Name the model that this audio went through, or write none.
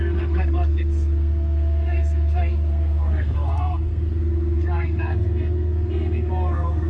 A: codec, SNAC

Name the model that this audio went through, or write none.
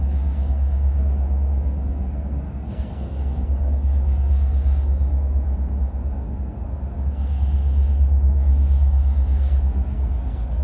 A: codec, SNAC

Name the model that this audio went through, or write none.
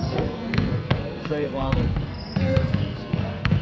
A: codec, SNAC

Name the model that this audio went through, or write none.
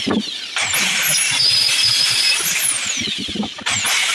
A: none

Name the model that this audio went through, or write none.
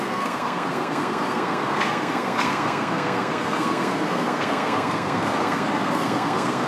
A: codec, SNAC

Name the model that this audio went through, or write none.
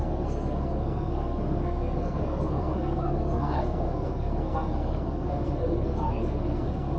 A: codec, SNAC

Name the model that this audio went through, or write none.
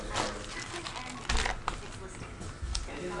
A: none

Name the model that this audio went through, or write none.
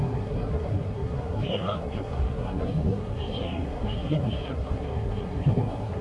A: codec, SNAC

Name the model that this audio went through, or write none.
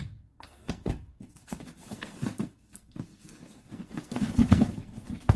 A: codec, SNAC